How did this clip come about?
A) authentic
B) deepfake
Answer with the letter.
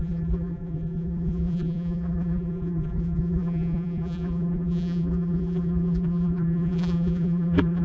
B